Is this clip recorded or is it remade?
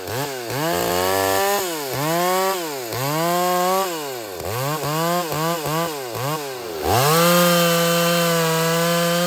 recorded